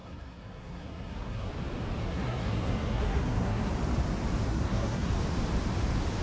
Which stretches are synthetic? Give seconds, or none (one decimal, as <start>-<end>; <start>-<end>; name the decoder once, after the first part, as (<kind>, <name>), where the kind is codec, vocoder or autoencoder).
0.0-1.5 (codec, SNAC); 2.0-3.7; 4.5-5.1

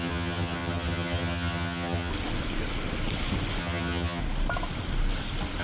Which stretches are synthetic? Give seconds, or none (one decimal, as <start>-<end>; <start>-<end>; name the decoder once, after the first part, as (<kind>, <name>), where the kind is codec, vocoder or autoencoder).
0.0-2.1 (vocoder, HiFi-GAN); 3.6-4.2